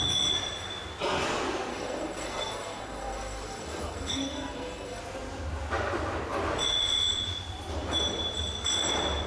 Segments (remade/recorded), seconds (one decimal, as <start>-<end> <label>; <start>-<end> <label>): 0.0-1.7 recorded; 1.7-5.0 remade; 5.0-9.3 recorded